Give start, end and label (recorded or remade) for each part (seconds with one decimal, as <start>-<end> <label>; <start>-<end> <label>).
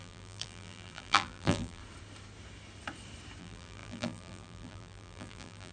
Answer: 0.0-1.8 remade; 1.8-3.4 recorded; 3.4-5.7 remade